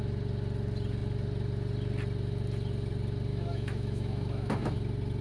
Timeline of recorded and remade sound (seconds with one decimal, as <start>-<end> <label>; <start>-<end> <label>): 0.0-3.3 recorded; 3.3-4.8 remade; 4.8-5.2 recorded